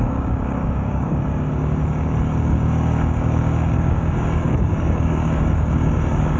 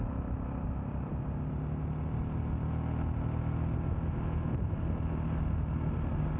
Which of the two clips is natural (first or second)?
second